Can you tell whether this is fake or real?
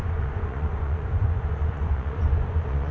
fake